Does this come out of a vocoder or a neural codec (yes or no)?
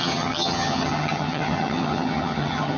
yes